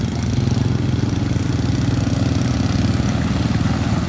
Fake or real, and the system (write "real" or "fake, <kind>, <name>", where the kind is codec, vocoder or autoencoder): real